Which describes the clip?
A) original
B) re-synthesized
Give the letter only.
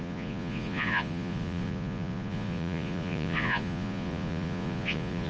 B